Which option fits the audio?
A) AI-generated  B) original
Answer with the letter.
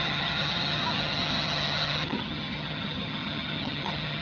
A